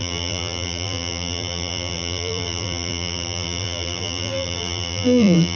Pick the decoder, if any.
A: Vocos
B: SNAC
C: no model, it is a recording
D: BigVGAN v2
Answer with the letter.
D